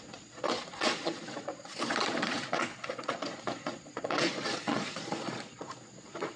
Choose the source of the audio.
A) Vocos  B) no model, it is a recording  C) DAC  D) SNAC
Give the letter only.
A